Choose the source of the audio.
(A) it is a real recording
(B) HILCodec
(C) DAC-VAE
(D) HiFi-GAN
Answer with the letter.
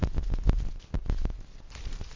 A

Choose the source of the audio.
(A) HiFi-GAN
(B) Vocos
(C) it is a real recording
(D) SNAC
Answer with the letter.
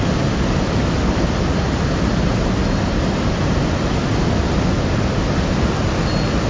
C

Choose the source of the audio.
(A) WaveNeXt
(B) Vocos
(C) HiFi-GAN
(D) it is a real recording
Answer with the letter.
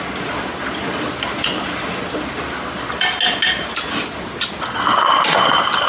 D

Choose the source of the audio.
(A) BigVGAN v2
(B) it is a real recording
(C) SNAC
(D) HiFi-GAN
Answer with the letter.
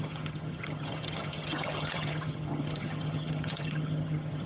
D